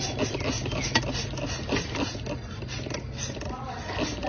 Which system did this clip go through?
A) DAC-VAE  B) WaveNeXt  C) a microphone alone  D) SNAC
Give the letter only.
C